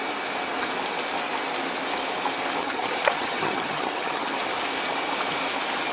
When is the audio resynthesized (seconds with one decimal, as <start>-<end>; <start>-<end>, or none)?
2.6-4.3